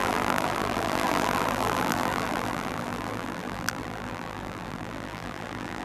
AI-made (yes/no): yes